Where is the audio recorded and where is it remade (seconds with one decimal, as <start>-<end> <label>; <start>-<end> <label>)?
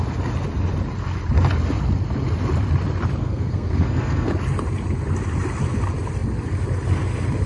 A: 0.0-3.2 recorded; 3.2-4.3 remade; 4.3-7.5 recorded